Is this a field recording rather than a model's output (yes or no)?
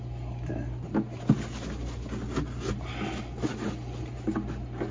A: yes